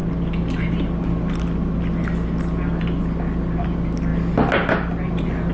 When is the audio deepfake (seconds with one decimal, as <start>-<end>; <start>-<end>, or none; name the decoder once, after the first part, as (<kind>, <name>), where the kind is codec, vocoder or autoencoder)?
none

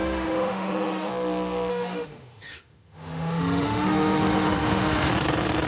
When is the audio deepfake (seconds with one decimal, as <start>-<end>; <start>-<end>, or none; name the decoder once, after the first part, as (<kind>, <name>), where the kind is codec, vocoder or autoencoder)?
0.0-1.1 (autoencoder, DAC-VAE); 1.7-5.1

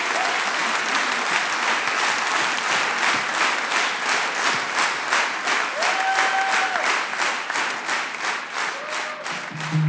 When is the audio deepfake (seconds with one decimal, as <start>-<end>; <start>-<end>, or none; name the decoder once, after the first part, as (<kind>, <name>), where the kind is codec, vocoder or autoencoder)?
none

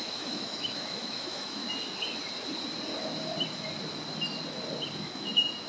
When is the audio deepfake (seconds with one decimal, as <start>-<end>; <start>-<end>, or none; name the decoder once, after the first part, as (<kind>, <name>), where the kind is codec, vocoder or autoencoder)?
0.0-1.6 (autoencoder, DAC-VAE); 5.0-5.7

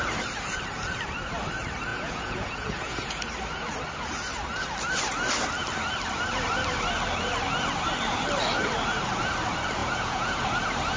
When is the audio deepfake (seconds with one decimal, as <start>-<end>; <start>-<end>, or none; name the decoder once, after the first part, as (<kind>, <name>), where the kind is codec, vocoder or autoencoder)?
1.9-3.2 (vocoder, Vocos); 9.8-10.3

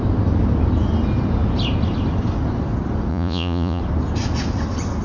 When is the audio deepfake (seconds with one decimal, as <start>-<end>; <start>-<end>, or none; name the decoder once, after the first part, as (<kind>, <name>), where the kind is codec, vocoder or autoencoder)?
3.1-3.8 (vocoder, Vocos)

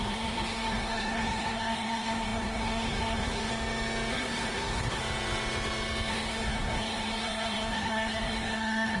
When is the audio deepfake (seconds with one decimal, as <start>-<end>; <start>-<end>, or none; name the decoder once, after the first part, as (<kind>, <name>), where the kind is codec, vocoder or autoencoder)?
0.0-3.5 (codec, SNAC); 4.1-5.0; 6.1-9.0